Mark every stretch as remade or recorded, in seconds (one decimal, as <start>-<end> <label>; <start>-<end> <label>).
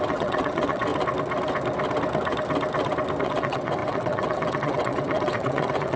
0.0-0.9 remade; 0.9-3.2 recorded; 3.2-6.0 remade